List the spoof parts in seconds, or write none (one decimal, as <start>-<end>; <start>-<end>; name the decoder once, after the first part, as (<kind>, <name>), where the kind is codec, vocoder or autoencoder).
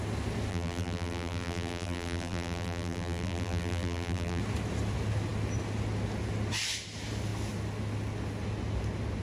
0.5-4.4 (vocoder, BigVGAN v2)